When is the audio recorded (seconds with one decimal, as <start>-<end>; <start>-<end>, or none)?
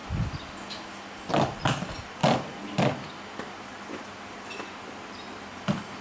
0.0-6.0